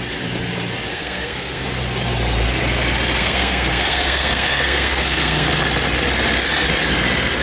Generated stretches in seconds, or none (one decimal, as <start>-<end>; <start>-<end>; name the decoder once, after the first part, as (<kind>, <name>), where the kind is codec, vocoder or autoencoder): 0.9-1.6 (codec, SNAC); 3.2-5.5